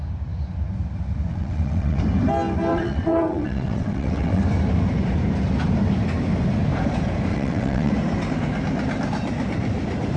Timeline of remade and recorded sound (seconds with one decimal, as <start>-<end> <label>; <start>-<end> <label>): 0.0-1.3 recorded; 1.3-2.0 remade; 2.0-2.7 recorded; 2.7-4.4 remade; 4.4-7.3 recorded; 7.3-7.9 remade; 7.9-10.2 recorded